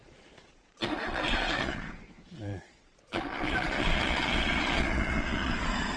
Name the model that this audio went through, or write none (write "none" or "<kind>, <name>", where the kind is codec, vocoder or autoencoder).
vocoder, Vocos